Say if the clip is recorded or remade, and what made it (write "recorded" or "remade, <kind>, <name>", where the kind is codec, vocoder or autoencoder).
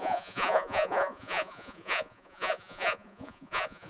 remade, vocoder, Vocos